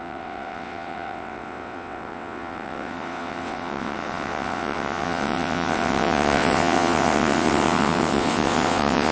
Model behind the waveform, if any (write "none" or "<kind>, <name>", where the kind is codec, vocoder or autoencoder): vocoder, WaveNeXt